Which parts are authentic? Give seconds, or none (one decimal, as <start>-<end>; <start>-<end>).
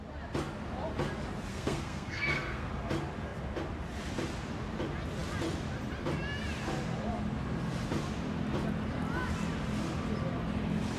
0.0-1.5; 2.7-11.0